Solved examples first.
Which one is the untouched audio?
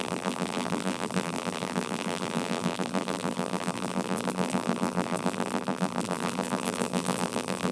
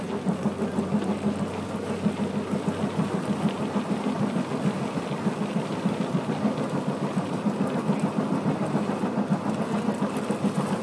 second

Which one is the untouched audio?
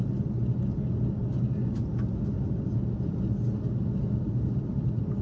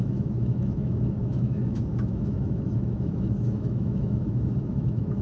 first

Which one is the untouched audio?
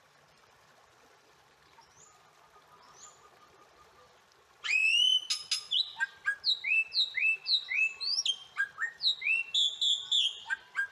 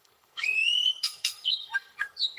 first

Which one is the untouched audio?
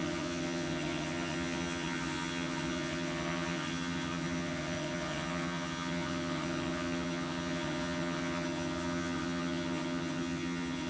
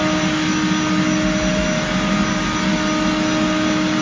second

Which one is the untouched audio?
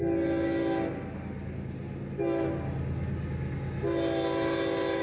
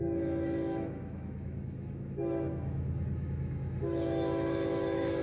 first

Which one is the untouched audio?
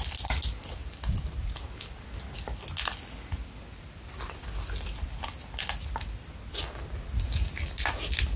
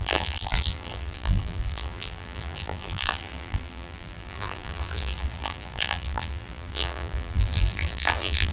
first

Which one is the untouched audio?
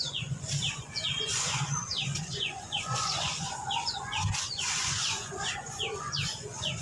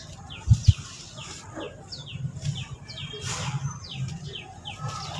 second